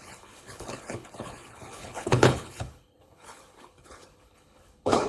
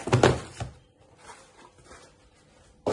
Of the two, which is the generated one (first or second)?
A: first